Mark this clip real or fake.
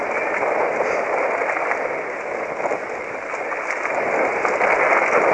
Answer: real